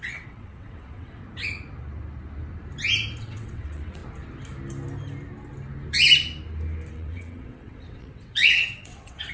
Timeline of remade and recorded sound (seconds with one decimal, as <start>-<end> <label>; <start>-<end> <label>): 0.0-1.2 remade; 1.2-3.2 recorded; 3.2-4.0 remade; 4.0-6.9 recorded; 6.9-9.3 remade